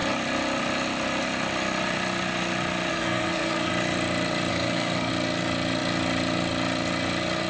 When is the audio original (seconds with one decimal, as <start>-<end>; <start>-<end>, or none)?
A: 0.0-2.9; 3.7-4.5; 5.1-7.5